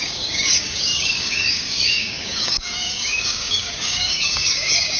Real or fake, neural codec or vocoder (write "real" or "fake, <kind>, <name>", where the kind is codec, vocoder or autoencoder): fake, codec, DAC